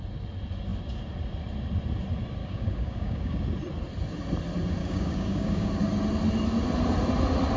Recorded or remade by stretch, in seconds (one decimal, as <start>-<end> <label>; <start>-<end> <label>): 0.0-2.4 recorded; 2.4-3.4 remade; 3.4-4.8 recorded; 4.8-5.7 remade; 5.7-7.6 recorded